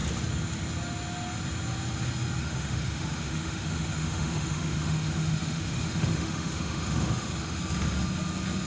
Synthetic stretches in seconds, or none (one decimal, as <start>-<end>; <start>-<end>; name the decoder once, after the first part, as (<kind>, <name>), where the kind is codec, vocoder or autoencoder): 2.4-7.6 (autoencoder, DAC-VAE)